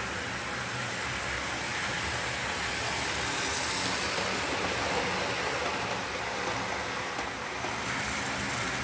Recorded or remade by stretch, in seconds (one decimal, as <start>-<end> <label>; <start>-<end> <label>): 0.0-8.8 recorded